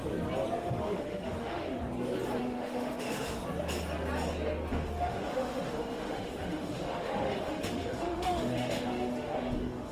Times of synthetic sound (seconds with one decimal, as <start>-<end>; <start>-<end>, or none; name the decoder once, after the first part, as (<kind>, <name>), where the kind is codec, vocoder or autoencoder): 0.6-1.8 (autoencoder, DAC-VAE); 2.4-3.4; 4.7-9.9